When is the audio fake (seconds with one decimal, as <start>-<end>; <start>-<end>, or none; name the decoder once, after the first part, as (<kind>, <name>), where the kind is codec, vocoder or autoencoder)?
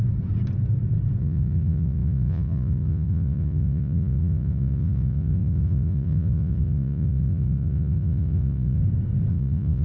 1.2-8.8 (vocoder, Vocos); 9.3-9.8